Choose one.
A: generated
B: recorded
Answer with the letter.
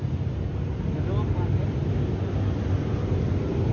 B